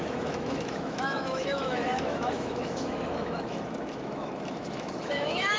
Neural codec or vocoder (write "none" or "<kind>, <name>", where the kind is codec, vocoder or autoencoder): autoencoder, DAC-VAE